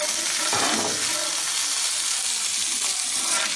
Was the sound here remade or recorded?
recorded